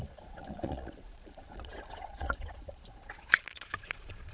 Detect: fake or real fake